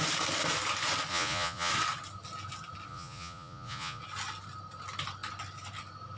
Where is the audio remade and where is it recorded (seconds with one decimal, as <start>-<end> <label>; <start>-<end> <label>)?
0.0-1.1 recorded; 1.1-1.7 remade; 1.7-2.9 recorded; 2.9-4.0 remade; 4.0-6.2 recorded